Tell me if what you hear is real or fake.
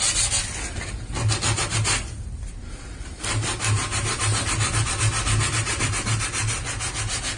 real